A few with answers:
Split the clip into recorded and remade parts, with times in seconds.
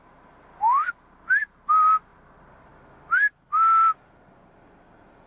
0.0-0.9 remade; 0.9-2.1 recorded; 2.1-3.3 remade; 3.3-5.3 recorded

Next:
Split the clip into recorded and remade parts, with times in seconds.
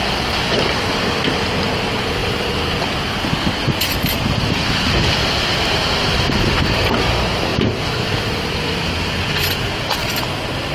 0.0-2.2 recorded; 2.2-5.8 remade; 5.8-10.7 recorded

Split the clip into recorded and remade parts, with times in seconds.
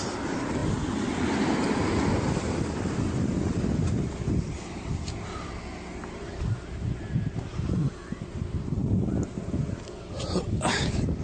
0.0-0.6 recorded; 0.6-2.7 remade; 2.7-11.2 recorded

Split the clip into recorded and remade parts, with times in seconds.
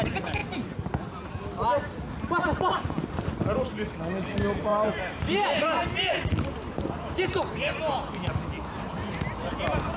0.0-4.7 recorded; 4.7-7.8 remade; 7.8-8.9 recorded; 8.9-9.5 remade; 9.5-10.0 recorded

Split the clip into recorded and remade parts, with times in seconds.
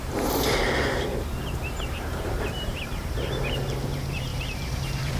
0.0-5.2 remade